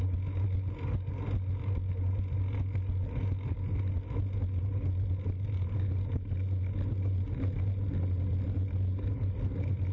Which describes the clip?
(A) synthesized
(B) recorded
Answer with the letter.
B